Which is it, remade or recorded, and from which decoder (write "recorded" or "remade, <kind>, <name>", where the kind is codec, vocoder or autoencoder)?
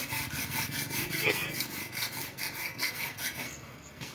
remade, codec, SNAC